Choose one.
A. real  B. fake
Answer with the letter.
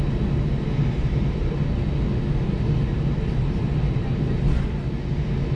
A